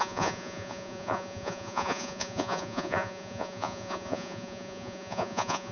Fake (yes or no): yes